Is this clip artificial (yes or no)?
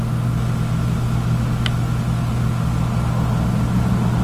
no